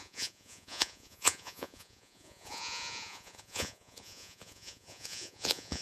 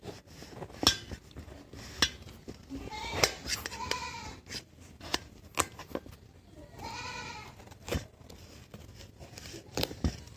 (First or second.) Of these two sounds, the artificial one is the first